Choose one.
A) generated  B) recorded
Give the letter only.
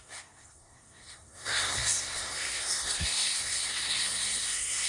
A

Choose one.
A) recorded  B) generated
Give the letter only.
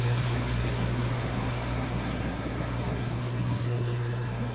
B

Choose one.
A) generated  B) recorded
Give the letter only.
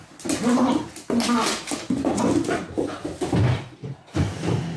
B